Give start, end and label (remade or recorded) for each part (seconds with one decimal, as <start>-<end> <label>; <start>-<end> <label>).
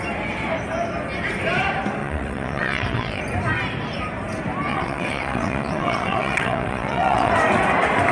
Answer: 0.0-2.0 recorded; 2.0-3.2 remade; 3.2-4.7 recorded; 4.7-7.3 remade; 7.3-8.1 recorded